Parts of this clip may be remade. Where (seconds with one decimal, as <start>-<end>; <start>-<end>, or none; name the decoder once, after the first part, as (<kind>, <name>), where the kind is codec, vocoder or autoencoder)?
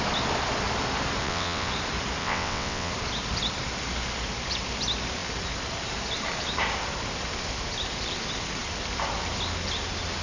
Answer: 1.2-1.7 (vocoder, WaveNeXt); 2.2-2.9